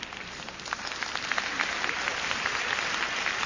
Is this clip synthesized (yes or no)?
no